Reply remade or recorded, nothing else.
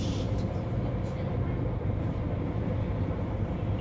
remade